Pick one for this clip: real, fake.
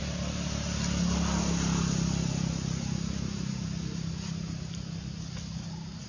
real